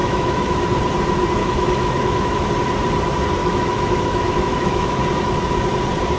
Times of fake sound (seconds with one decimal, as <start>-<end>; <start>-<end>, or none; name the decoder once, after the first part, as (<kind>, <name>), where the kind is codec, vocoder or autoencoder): 0.0-0.6 (autoencoder, DAC-VAE); 1.4-2.5; 3.4-5.0

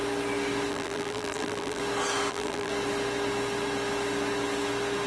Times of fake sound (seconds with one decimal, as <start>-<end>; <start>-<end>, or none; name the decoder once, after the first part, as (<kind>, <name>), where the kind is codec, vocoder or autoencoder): 0.7-1.8 (vocoder, BigVGAN v2); 2.3-2.7

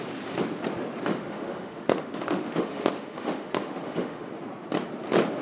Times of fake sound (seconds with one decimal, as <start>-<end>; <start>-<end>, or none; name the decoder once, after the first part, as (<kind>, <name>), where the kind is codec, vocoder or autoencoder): 1.1-4.3 (autoencoder, DAC-VAE)